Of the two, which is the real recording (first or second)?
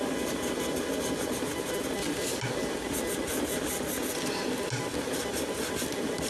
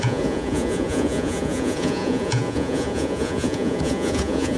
first